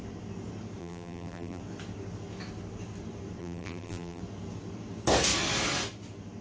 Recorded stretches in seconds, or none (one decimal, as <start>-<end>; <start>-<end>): 0.0-0.8; 1.6-3.4; 4.2-6.4